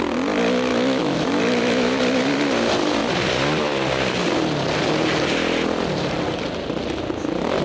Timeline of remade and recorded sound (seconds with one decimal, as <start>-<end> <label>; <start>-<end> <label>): 0.0-0.7 recorded; 0.7-2.0 remade; 2.0-7.6 recorded